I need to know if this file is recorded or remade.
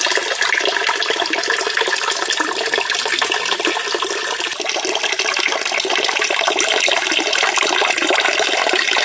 recorded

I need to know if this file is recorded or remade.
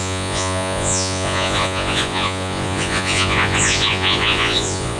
remade